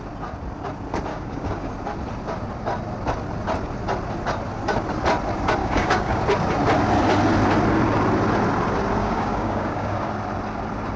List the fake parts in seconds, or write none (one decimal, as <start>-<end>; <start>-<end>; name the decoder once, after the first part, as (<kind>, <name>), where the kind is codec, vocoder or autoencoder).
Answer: 1.1-1.7 (codec, DAC); 5.6-6.2; 9.0-10.1